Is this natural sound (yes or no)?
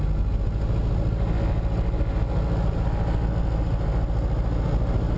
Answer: yes